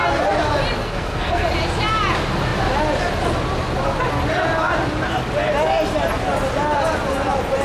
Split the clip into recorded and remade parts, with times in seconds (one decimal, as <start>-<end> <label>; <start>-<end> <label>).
0.0-0.8 recorded; 0.8-1.5 remade; 1.5-7.6 recorded